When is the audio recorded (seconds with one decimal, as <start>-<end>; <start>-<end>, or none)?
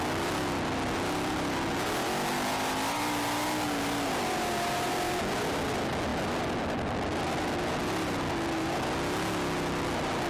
0.0-10.3